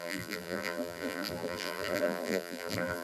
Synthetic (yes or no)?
yes